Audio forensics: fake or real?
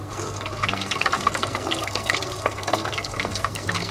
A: fake